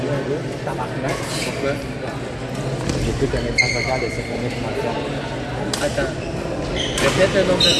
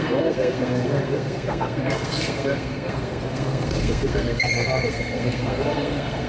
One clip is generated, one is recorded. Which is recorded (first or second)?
first